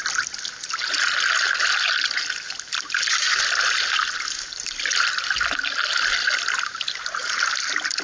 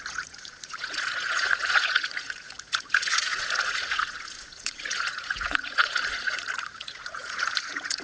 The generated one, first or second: second